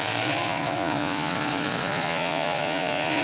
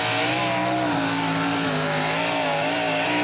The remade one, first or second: first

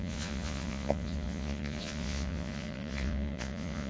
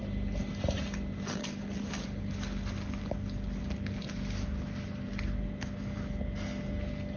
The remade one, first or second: first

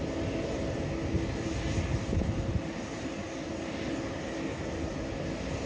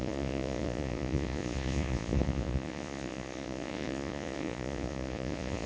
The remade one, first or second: second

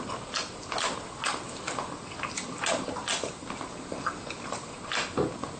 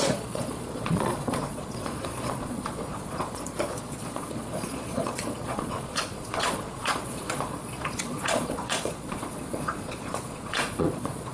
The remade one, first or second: second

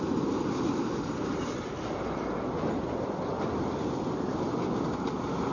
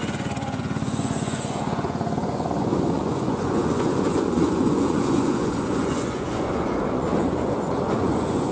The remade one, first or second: second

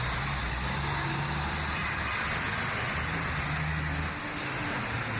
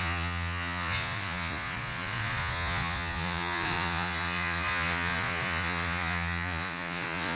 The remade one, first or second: second